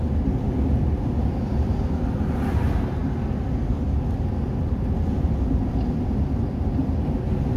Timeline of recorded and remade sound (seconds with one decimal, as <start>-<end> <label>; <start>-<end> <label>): 0.0-7.6 recorded